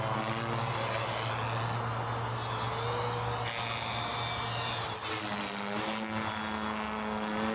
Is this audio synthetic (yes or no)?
no